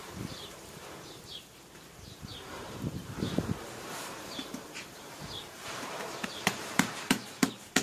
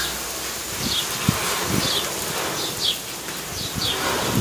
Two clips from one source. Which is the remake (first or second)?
first